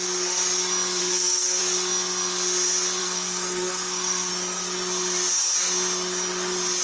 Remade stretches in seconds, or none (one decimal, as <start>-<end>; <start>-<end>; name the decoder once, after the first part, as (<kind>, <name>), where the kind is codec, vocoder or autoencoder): 1.0-1.6 (codec, SNAC); 3.0-4.3